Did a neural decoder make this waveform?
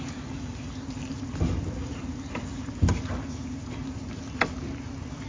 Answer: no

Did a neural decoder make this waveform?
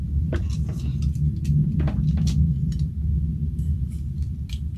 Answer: no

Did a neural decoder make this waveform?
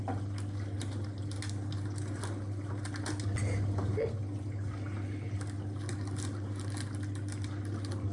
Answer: no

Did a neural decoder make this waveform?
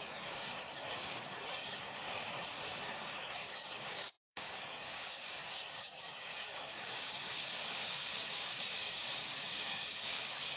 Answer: yes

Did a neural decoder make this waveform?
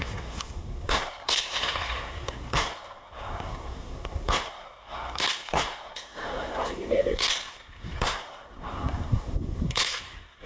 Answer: yes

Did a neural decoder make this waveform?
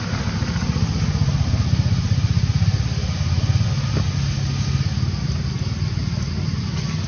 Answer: no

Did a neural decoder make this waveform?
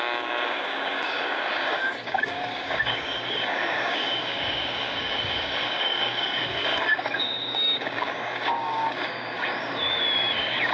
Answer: yes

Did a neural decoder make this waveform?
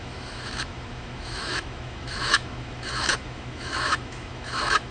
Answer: yes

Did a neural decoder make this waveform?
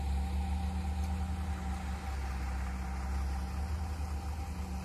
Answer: no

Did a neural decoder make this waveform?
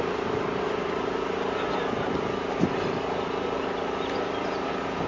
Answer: no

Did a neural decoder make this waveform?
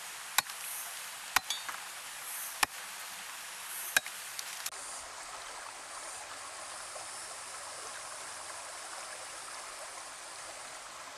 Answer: no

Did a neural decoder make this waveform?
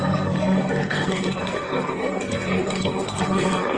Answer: yes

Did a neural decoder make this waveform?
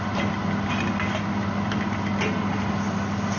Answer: no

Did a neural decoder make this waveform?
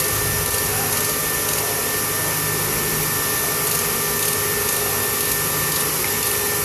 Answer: no